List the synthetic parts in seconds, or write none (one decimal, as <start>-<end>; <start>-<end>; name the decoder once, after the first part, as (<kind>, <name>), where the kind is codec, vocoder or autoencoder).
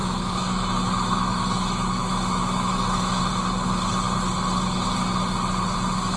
0.0-3.2 (autoencoder, DAC-VAE)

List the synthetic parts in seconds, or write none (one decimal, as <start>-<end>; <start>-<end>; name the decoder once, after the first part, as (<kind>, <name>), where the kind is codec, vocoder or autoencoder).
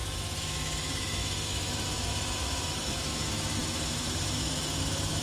0.0-5.2 (autoencoder, DAC-VAE)